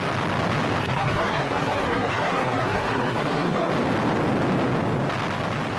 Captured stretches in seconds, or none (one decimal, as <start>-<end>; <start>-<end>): 0.0-0.8; 3.7-5.8